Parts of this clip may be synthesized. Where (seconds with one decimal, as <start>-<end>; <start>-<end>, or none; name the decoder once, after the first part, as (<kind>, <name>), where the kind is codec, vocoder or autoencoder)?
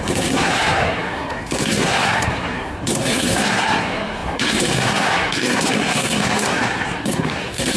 0.0-7.8 (codec, SNAC)